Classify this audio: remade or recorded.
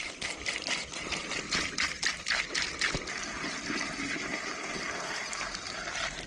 recorded